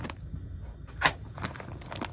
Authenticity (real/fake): real